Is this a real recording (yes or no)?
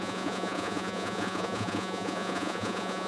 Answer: no